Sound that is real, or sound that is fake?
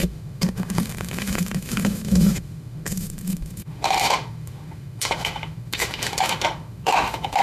fake